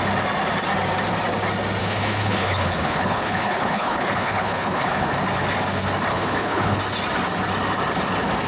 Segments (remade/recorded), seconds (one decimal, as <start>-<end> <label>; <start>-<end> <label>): 0.0-1.8 recorded; 1.8-5.1 remade; 5.1-6.1 recorded; 6.1-6.8 remade; 6.8-8.5 recorded